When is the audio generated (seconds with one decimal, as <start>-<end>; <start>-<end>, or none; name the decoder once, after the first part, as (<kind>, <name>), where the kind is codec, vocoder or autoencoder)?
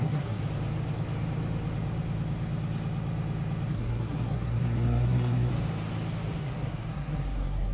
0.0-0.4 (codec, SNAC); 3.7-5.5; 6.4-7.7